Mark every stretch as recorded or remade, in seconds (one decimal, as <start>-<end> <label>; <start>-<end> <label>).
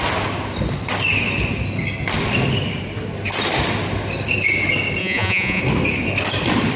0.0-5.0 recorded; 5.0-5.6 remade; 5.6-6.8 recorded